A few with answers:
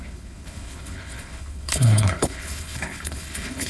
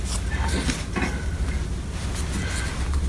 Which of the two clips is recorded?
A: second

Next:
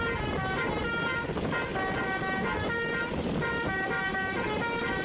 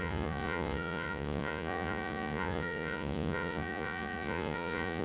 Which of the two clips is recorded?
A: first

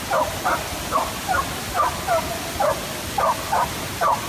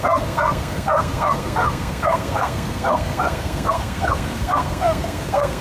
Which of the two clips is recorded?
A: first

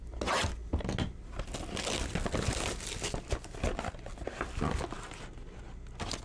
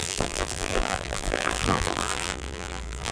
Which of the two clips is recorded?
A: first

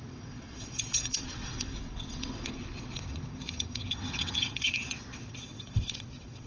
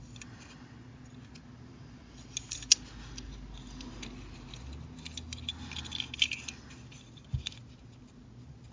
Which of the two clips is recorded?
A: second